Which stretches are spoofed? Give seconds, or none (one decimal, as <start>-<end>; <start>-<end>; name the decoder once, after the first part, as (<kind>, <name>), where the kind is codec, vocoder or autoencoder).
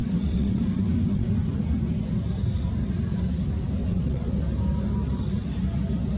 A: 0.0-1.3 (vocoder, WaveNeXt); 3.8-4.3